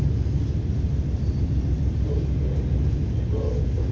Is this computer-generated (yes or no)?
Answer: no